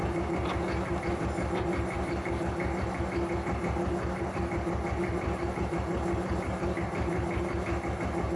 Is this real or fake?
real